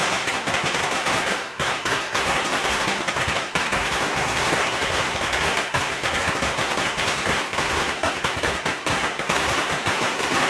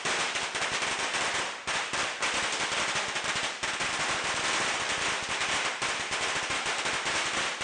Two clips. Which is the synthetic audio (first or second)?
first